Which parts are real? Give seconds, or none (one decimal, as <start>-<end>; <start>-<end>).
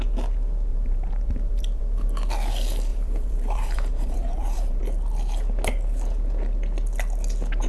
0.0-0.7; 1.8-2.9; 4.8-7.7